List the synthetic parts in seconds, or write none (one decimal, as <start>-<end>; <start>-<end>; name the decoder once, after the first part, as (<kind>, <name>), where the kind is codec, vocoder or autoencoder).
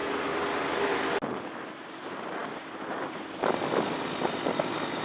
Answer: none